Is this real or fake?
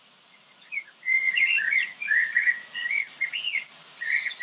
fake